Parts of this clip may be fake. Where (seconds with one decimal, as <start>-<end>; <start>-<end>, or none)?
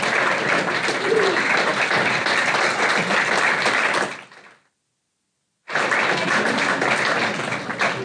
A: none